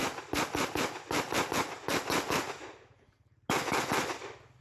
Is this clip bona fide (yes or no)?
yes